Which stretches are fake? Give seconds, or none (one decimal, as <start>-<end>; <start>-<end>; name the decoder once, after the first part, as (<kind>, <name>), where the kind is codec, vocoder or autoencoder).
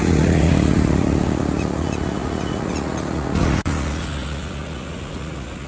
0.0-5.7 (vocoder, Vocos)